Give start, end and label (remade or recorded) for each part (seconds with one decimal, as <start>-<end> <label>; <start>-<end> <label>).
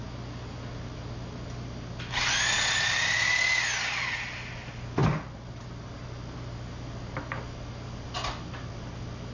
0.0-9.3 recorded